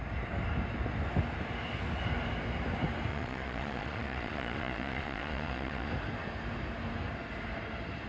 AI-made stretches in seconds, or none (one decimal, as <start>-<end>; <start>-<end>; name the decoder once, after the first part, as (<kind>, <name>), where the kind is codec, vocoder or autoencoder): 3.1-5.9 (vocoder, Vocos)